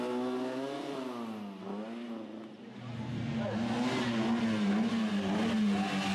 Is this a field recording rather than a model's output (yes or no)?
yes